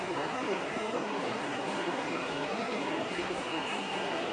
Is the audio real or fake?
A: fake